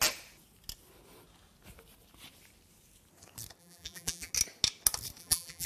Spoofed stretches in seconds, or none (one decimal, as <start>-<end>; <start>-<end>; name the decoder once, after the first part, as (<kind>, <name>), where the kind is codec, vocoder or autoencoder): 3.6-4.3 (vocoder, BigVGAN v2); 5.2-5.7